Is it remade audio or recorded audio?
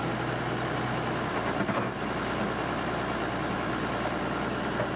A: recorded